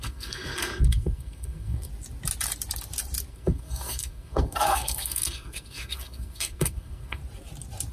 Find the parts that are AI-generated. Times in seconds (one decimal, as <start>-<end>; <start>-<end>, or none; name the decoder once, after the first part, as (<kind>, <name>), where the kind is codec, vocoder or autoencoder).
0.0-1.9 (codec, SNAC); 3.3-7.2